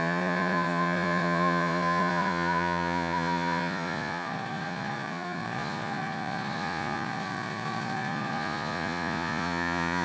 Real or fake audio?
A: fake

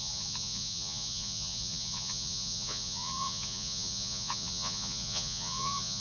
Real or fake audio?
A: fake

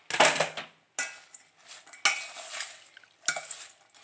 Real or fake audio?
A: real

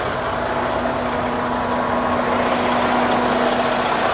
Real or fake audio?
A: real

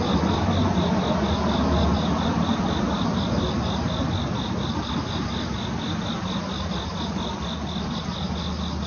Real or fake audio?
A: real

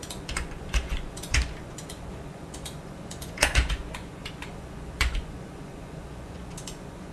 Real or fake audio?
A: fake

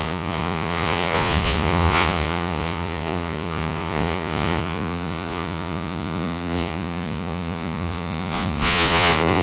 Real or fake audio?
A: fake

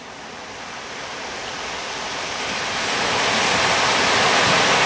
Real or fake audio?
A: real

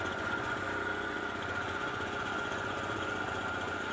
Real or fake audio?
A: fake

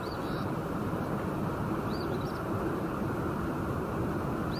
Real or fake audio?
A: real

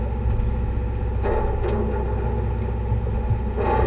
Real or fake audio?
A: real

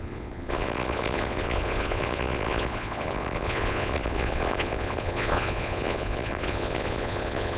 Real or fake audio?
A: fake